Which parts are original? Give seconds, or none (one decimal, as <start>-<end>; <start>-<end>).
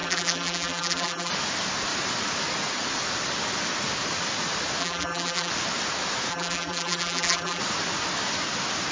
1.3-4.8; 5.5-6.3; 7.6-8.9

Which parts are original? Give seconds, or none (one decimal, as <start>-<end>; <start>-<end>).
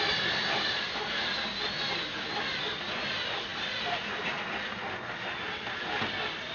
0.0-6.5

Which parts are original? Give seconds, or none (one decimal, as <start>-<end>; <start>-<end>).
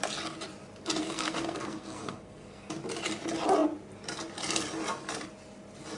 0.0-1.0; 2.7-6.0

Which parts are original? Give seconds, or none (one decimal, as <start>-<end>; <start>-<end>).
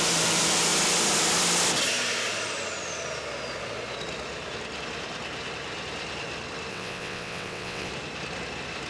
0.0-6.7; 7.9-8.9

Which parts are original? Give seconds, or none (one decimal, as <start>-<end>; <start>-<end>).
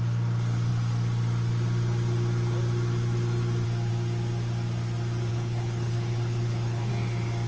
0.0-5.3; 6.9-7.5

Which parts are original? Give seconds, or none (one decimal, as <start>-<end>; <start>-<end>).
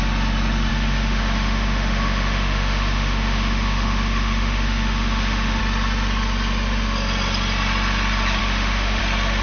0.0-0.7; 5.6-8.4; 9.0-9.4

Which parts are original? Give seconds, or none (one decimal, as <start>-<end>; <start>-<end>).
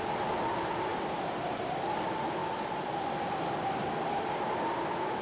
0.0-5.2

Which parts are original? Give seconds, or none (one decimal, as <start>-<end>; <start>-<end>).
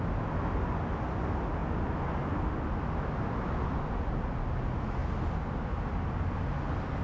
0.0-7.0